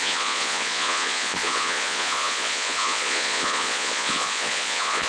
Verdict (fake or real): fake